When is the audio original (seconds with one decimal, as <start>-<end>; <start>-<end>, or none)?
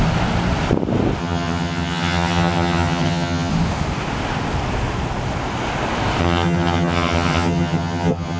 0.0-1.2; 3.5-6.2